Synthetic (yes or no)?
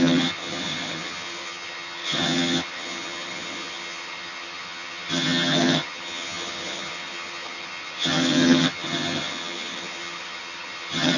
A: yes